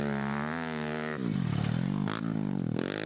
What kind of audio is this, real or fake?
real